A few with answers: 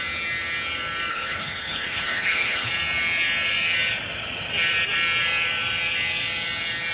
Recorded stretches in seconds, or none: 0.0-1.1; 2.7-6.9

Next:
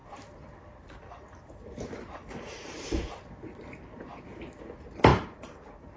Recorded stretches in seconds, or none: 3.3-5.1

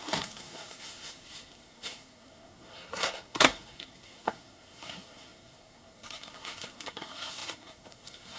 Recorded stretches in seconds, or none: none

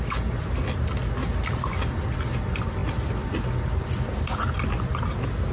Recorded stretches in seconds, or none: 0.0-5.5

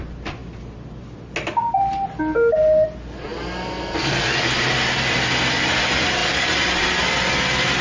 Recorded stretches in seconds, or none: 0.0-7.8

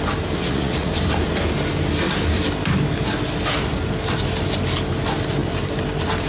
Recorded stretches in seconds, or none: 0.0-0.4; 0.9-6.3